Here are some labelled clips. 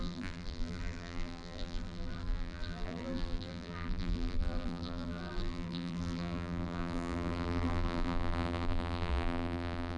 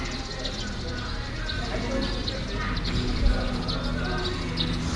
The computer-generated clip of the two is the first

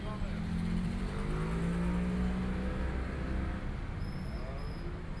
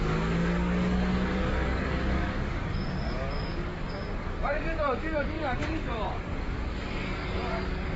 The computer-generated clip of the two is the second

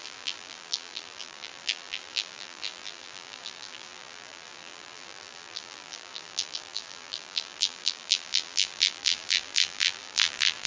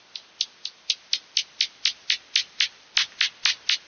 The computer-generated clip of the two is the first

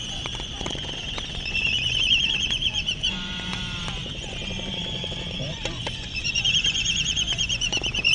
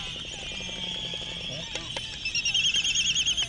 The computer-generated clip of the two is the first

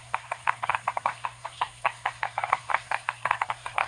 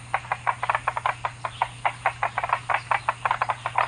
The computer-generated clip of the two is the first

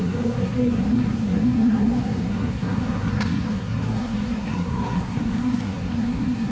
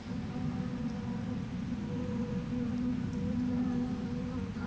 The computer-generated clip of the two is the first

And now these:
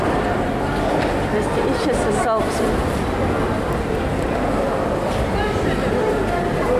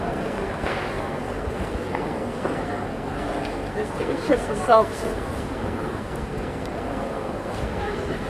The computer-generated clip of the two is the second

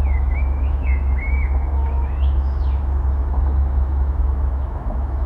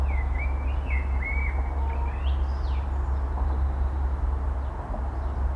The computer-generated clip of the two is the first